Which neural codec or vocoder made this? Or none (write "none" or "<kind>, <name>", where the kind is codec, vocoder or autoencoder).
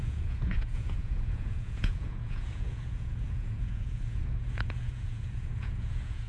vocoder, Vocos